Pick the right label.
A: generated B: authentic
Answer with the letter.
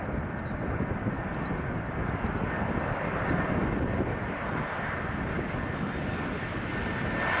B